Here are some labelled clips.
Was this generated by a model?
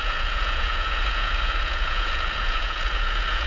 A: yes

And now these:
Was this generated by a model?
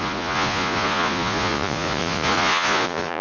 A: yes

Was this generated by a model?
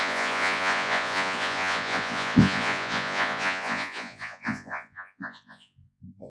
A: yes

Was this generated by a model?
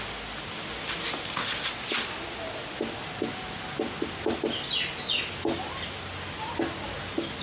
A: no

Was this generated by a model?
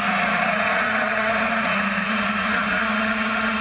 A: yes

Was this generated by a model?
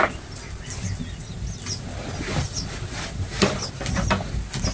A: no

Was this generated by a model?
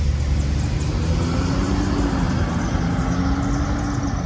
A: no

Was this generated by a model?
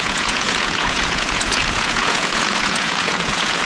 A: yes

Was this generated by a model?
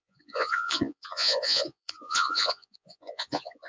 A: yes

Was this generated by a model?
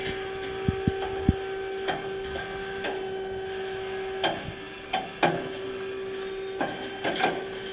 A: no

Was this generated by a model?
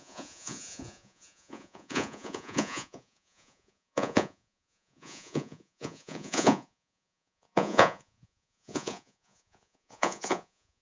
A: yes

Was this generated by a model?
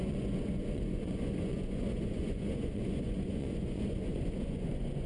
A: yes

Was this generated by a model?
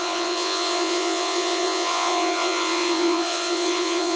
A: yes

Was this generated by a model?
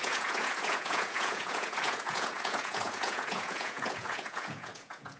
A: yes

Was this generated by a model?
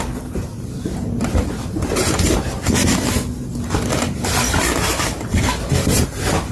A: no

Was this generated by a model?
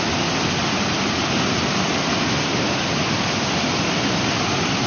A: no